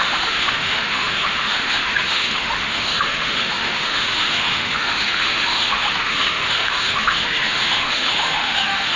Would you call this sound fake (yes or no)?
yes